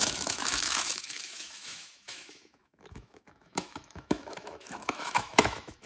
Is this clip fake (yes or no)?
yes